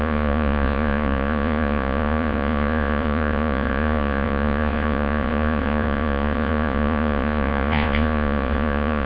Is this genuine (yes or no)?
no